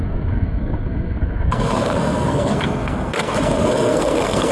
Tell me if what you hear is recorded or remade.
remade